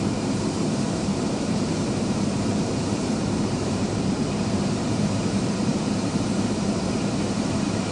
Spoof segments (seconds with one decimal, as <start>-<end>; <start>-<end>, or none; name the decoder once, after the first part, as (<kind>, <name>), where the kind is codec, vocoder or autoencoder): 0.0-7.9 (vocoder, BigVGAN v2)